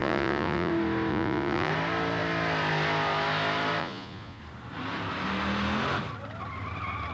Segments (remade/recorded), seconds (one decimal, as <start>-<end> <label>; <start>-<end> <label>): 0.0-0.7 remade; 0.7-1.1 recorded; 1.1-1.7 remade; 1.7-3.8 recorded; 3.8-4.4 remade; 4.4-7.1 recorded